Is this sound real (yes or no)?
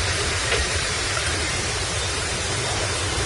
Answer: no